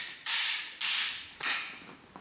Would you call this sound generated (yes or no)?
no